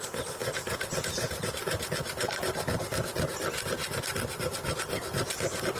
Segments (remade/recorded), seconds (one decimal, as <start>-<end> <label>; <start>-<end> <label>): 0.0-0.4 recorded; 0.4-1.5 remade; 1.5-5.8 recorded

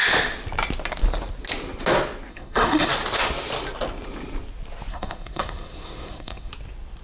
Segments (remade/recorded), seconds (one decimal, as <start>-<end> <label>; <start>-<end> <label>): 0.0-2.3 recorded; 2.3-2.9 remade; 2.9-4.9 recorded; 4.9-6.5 remade; 6.5-7.0 recorded

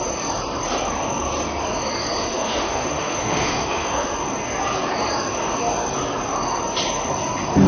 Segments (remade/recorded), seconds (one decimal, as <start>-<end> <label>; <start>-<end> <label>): 0.0-2.3 recorded; 2.3-4.1 remade; 4.1-7.7 recorded

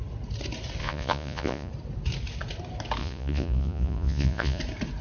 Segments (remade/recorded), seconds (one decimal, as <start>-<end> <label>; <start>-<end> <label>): 0.0-0.8 recorded; 0.8-1.7 remade; 1.7-3.0 recorded; 3.0-4.6 remade; 4.6-5.0 recorded

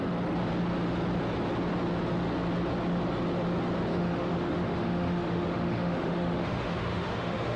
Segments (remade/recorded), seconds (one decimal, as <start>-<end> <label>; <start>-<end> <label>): 0.0-3.9 recorded; 3.9-7.6 remade

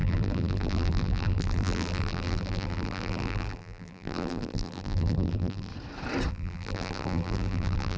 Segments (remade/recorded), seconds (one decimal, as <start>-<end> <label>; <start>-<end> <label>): 0.0-5.7 remade; 5.7-6.3 recorded; 6.3-8.0 remade